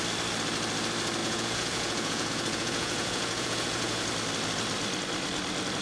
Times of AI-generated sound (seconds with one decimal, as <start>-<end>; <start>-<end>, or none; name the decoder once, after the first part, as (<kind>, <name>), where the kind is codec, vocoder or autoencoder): 1.2-4.0 (vocoder, Vocos)

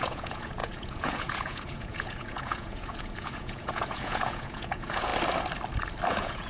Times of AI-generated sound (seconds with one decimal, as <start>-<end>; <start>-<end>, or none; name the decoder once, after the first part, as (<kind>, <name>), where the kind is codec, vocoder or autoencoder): 0.0-5.1 (vocoder, Vocos); 6.1-6.5

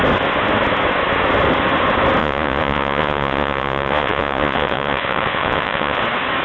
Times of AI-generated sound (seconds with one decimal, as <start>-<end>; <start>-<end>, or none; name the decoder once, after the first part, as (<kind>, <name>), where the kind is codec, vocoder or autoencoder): 2.2-6.0 (vocoder, Vocos)